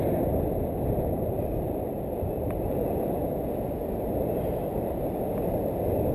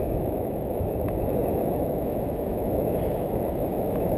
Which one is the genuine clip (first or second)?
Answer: first